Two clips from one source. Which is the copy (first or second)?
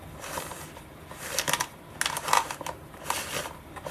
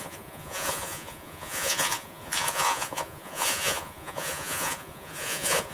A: second